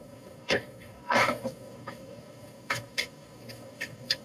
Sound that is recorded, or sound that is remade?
remade